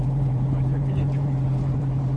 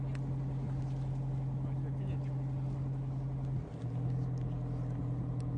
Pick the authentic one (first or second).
second